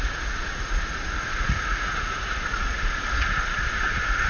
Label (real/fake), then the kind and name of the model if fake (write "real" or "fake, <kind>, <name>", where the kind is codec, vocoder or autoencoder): fake, vocoder, Vocos